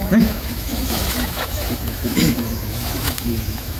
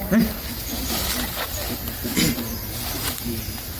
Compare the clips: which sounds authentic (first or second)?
second